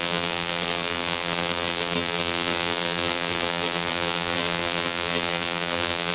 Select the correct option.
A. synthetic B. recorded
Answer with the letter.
A